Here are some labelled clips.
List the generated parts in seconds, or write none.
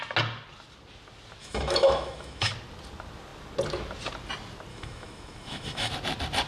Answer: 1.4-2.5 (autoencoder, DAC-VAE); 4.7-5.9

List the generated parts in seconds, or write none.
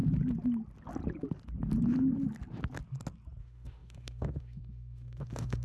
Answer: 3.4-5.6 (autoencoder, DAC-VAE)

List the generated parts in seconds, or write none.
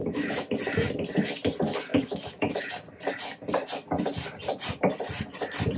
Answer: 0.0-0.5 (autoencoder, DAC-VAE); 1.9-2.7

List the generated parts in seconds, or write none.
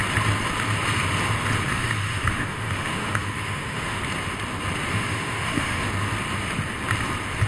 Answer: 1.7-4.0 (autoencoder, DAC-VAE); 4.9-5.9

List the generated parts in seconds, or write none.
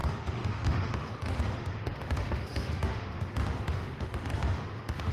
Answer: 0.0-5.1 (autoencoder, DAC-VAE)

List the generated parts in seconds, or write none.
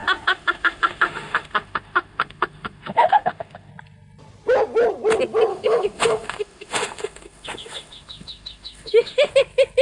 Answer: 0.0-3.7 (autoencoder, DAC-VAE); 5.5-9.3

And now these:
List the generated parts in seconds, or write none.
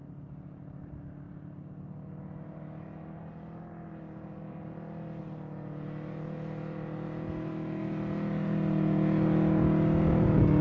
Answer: none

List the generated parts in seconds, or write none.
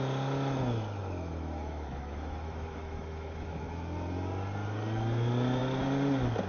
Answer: 1.0-3.6 (autoencoder, DAC-VAE)